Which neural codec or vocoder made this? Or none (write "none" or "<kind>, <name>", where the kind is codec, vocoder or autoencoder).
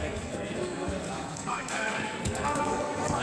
codec, SNAC